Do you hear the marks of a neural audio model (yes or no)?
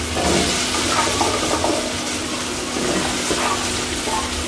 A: no